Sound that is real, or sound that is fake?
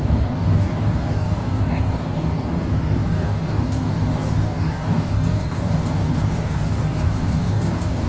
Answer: fake